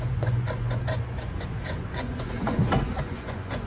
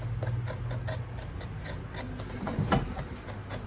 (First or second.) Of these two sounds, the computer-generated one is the first